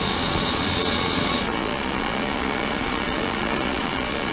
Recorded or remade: remade